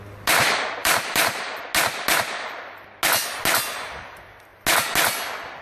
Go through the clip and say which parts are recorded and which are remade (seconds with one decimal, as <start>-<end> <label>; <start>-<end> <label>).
0.0-0.8 recorded; 0.8-1.6 remade; 1.6-5.6 recorded